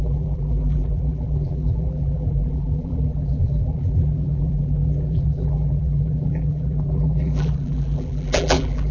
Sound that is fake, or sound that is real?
fake